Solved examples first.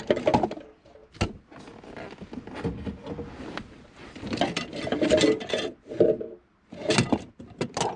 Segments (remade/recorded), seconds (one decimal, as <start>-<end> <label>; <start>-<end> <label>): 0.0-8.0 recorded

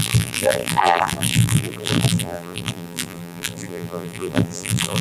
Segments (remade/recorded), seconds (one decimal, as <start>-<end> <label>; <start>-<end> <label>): 0.0-5.0 remade

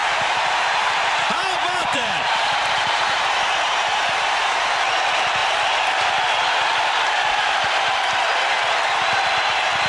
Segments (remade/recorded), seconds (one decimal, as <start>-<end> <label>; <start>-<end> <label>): 0.0-4.9 remade; 4.9-9.9 recorded